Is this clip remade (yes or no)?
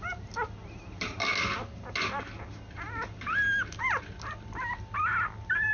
no